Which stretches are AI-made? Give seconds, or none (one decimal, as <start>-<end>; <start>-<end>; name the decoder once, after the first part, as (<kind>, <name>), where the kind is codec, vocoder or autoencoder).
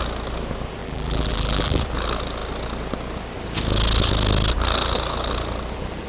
0.8-1.8 (vocoder, BigVGAN v2)